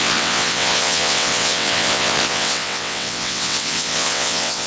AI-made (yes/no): yes